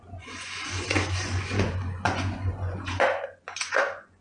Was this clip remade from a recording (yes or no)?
yes